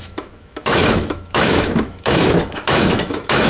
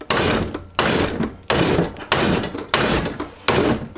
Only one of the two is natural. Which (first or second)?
second